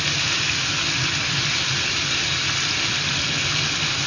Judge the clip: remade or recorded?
recorded